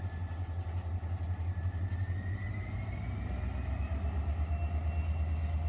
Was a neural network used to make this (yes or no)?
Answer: no